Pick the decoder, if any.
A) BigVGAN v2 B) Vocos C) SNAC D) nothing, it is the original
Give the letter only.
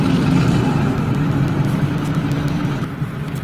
A